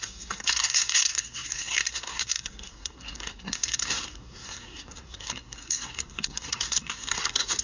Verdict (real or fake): fake